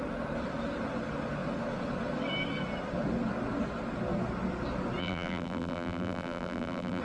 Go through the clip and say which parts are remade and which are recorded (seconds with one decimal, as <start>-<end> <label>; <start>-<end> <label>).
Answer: 0.0-5.0 recorded; 5.0-7.0 remade